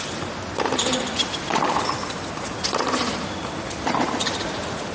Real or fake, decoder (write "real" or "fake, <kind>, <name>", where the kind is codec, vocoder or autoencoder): real